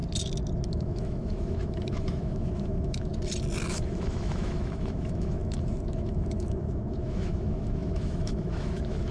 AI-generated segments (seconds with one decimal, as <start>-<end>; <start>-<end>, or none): 0.7-3.1; 3.7-9.1